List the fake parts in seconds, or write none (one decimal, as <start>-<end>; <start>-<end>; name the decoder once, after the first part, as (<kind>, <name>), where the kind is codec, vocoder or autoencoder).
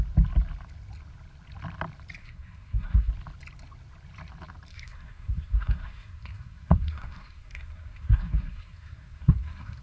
2.2-3.1 (codec, SNAC); 4.7-9.8